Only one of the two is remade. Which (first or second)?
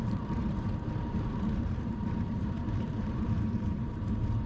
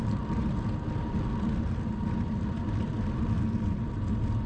first